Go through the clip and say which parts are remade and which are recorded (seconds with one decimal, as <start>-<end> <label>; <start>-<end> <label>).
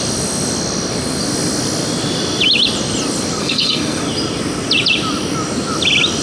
0.0-3.4 recorded; 3.4-4.0 remade; 4.0-6.2 recorded